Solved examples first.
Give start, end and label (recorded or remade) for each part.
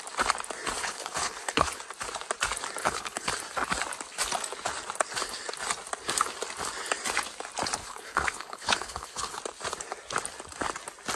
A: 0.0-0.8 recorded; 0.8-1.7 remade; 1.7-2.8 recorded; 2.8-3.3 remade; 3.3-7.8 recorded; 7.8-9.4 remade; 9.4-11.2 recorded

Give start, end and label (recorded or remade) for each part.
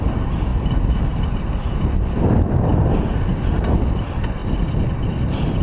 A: 0.0-0.5 remade; 0.5-3.9 recorded; 3.9-4.4 remade; 4.4-5.6 recorded